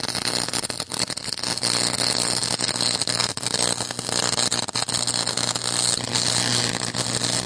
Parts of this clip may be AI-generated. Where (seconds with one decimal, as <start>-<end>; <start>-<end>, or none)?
none